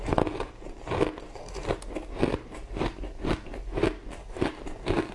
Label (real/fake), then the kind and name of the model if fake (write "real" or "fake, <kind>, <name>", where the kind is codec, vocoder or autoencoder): real